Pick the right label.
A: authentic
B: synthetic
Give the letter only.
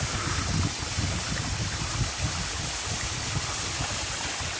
A